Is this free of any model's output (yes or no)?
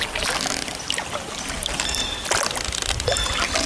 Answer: yes